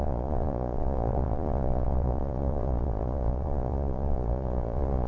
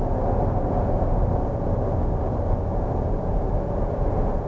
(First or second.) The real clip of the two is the second